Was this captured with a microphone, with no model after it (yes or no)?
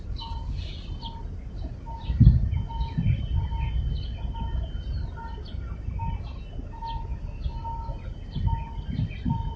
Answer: yes